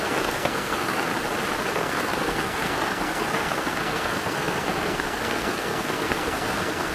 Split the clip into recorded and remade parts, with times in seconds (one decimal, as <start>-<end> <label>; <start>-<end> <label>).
0.0-1.1 remade; 1.1-1.7 recorded; 1.7-6.9 remade